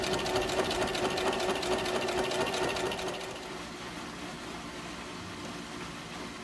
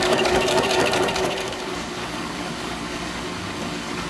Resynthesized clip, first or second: second